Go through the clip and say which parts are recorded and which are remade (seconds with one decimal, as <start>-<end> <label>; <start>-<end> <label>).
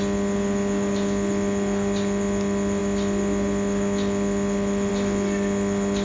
0.0-6.0 recorded